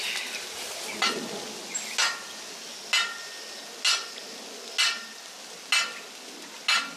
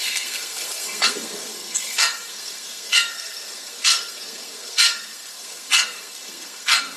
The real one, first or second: first